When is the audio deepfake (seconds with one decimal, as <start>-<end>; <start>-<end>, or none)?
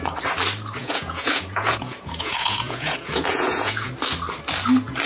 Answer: 0.8-3.9